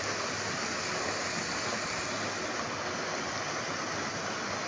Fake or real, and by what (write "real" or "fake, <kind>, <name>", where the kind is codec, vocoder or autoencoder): real